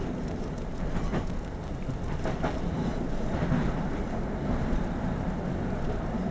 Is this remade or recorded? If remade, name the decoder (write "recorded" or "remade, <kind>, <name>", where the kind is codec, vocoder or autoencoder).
recorded